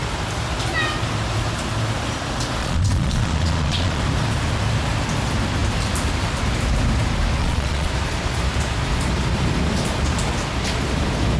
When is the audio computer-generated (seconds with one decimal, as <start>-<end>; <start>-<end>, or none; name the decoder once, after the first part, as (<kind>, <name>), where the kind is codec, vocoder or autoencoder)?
2.6-4.0 (vocoder, Vocos); 7.4-7.9